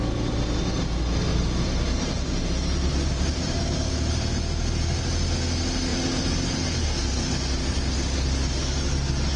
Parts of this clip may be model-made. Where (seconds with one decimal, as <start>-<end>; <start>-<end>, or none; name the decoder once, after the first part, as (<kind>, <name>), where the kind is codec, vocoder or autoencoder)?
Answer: 1.3-3.9 (vocoder, BigVGAN v2); 5.9-6.4